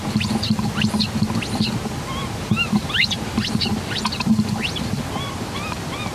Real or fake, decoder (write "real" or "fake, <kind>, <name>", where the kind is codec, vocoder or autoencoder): real